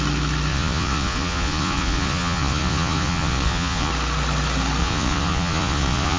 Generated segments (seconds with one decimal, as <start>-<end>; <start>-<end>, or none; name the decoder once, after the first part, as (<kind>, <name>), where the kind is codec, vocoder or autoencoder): 0.5-3.9 (vocoder, Vocos); 4.8-6.2